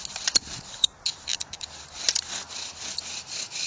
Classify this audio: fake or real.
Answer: real